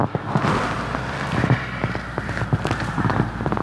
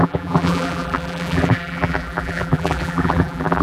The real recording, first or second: first